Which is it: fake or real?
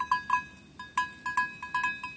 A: real